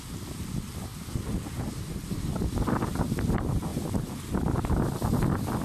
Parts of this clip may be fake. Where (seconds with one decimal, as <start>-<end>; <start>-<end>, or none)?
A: none